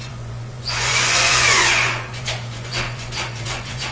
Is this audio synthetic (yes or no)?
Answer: yes